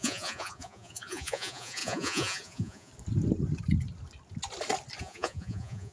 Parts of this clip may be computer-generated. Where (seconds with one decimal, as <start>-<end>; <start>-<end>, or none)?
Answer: 0.0-2.9; 5.0-5.9